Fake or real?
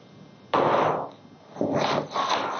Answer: real